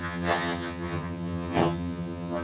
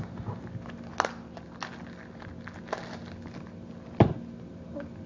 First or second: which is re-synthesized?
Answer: first